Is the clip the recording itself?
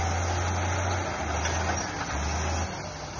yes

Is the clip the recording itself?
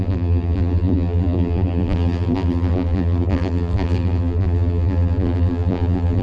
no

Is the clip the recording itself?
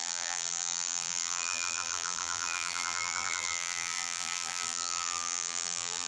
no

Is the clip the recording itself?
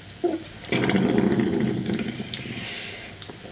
yes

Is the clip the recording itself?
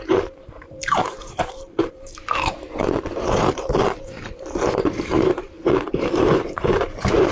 no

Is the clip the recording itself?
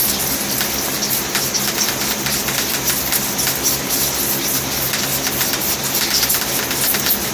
yes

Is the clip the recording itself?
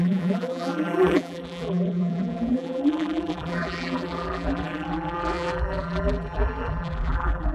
no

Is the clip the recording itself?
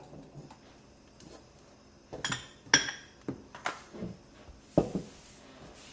yes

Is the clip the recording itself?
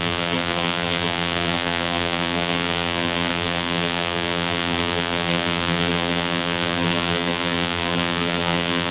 no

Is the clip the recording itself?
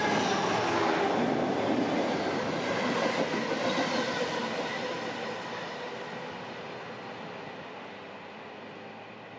yes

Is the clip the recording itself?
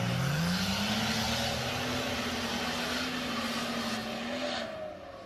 yes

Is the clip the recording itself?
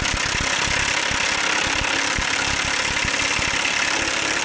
yes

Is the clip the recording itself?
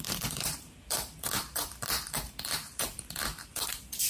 no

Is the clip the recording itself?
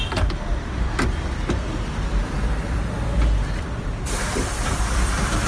no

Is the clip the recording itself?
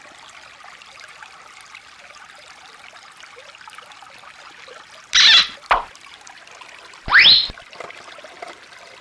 yes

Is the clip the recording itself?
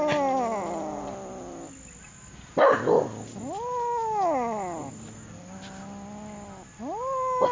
yes